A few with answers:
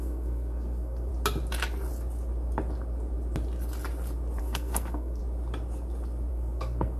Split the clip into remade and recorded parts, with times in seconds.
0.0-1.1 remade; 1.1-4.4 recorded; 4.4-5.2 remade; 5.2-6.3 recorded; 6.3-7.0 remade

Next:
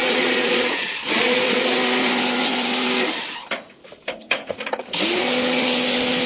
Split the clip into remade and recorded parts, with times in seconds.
0.0-1.7 remade; 1.7-6.3 recorded

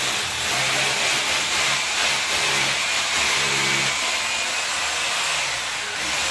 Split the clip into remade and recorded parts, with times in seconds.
0.0-6.3 recorded

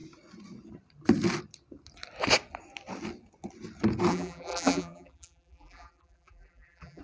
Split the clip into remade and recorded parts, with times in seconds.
0.0-4.1 recorded; 4.1-7.0 remade